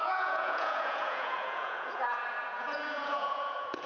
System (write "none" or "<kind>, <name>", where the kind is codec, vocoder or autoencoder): vocoder, Vocos